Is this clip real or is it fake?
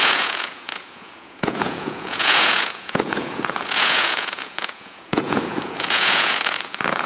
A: fake